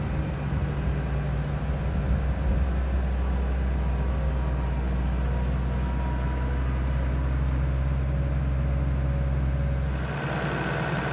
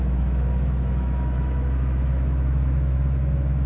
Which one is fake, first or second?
second